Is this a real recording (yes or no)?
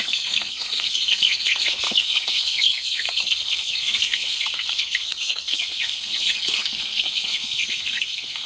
no